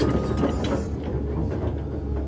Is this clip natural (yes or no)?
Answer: yes